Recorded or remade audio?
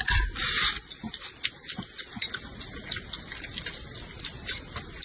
recorded